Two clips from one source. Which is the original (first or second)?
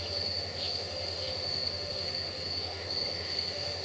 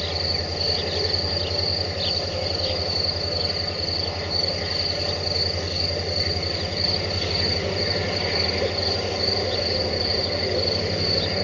second